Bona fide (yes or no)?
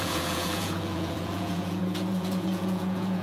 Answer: no